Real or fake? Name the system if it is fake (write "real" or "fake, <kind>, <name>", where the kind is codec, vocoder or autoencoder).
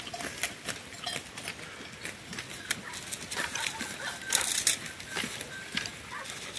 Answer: real